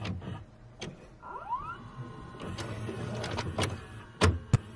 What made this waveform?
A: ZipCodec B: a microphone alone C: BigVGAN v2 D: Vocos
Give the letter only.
B